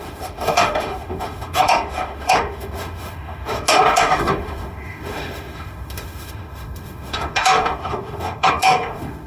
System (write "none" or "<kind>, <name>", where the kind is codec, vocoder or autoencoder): autoencoder, DAC-VAE